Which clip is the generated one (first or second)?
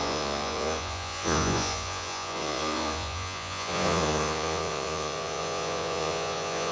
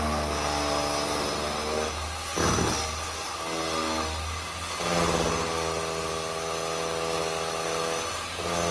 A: first